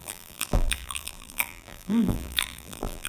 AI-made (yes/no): yes